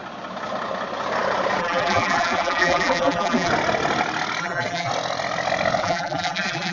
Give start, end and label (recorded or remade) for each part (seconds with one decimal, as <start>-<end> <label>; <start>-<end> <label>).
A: 0.0-1.6 recorded; 1.6-3.5 remade; 3.5-4.4 recorded; 4.4-4.9 remade; 4.9-5.8 recorded; 5.8-6.7 remade